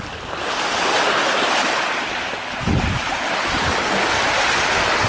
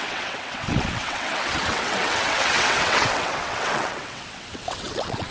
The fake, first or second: second